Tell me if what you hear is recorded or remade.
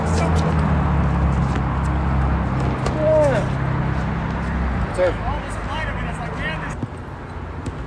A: recorded